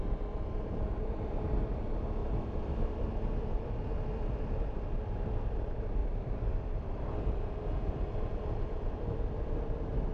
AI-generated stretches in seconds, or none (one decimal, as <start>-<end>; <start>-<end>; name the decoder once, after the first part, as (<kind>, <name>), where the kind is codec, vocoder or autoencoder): 2.2-4.5 (vocoder, BigVGAN v2); 6.0-7.2